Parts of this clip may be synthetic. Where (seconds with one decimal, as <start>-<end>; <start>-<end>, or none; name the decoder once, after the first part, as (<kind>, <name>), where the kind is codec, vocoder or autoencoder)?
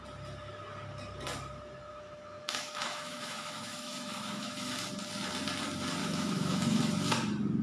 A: 1.9-4.7 (autoencoder, DAC-VAE); 6.0-6.8